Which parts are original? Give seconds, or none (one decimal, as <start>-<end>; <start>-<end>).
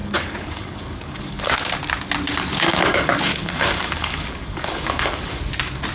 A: 1.8-2.5; 5.4-5.9